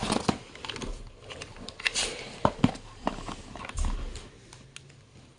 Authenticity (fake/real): real